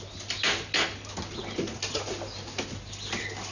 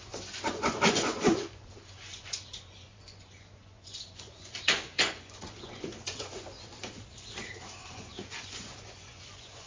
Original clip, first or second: first